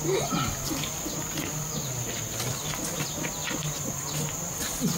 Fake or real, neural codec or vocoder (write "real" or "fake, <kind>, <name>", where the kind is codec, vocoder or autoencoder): real